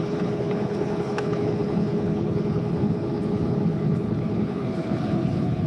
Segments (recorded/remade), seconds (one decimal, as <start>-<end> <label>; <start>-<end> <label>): 0.0-5.7 remade